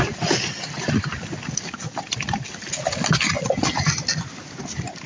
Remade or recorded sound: recorded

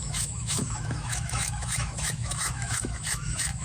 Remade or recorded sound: remade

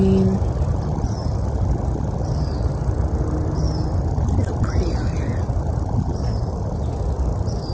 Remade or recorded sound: recorded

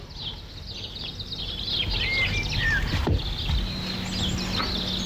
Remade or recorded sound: recorded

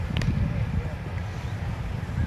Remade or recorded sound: recorded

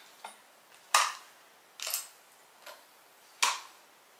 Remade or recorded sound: recorded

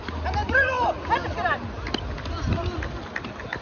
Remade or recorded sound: recorded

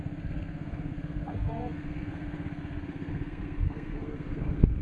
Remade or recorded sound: remade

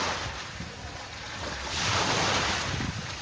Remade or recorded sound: recorded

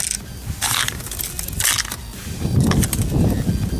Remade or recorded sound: recorded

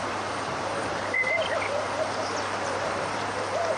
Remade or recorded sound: remade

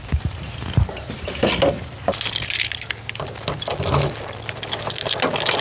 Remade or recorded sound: recorded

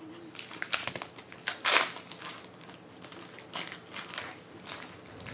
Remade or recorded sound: recorded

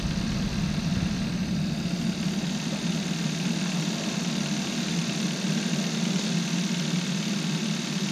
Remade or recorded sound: recorded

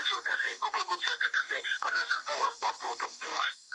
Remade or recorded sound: remade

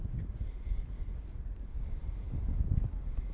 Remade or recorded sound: recorded